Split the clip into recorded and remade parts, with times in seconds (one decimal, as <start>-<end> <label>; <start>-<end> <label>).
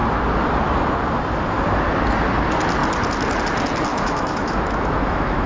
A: 0.0-3.9 recorded; 3.9-5.5 remade